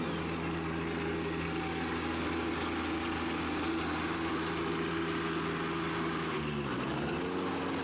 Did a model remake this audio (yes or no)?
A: no